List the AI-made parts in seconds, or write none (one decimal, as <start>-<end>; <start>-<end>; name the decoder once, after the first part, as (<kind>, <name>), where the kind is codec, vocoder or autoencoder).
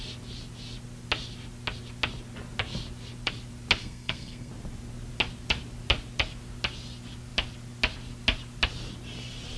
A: 3.8-4.5 (codec, SNAC)